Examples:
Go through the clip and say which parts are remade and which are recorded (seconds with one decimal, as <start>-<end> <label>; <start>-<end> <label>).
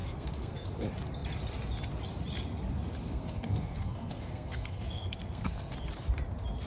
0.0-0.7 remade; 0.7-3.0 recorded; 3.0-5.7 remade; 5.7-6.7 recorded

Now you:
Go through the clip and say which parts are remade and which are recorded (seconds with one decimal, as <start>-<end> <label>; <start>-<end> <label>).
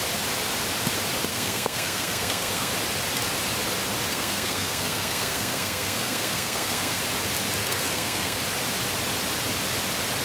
0.0-1.3 recorded; 1.3-2.7 remade; 2.7-4.1 recorded; 4.1-7.0 remade; 7.0-7.6 recorded; 7.6-8.4 remade; 8.4-10.2 recorded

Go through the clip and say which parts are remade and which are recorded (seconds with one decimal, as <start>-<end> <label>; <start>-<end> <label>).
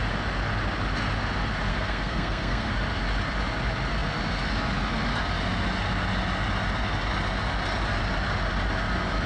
0.0-1.7 recorded; 1.7-2.7 remade; 2.7-9.3 recorded